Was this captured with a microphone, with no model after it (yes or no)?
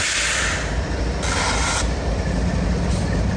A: yes